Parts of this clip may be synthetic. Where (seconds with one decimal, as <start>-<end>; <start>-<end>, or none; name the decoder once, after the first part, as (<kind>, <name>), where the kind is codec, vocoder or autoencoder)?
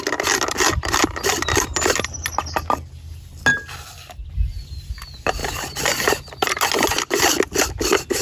none